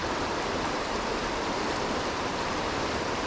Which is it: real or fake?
fake